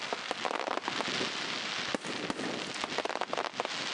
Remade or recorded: recorded